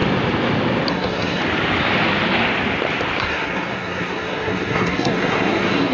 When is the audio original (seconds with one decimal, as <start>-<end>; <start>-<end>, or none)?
0.0-0.9; 1.4-3.2